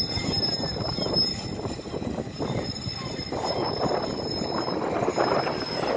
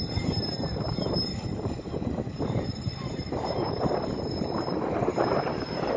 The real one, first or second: first